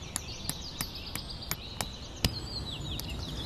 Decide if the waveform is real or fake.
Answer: real